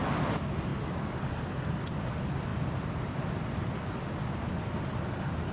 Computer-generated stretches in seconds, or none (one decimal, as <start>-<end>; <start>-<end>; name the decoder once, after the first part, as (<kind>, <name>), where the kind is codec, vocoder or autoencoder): none